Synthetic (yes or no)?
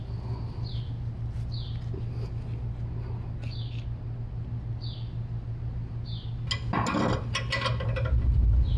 no